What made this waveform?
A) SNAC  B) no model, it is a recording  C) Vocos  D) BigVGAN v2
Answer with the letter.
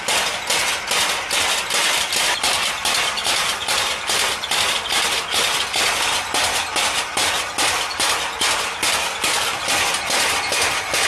B